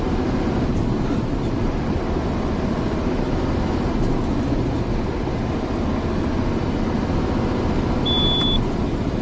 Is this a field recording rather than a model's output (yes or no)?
yes